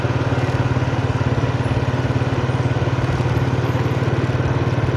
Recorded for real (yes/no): yes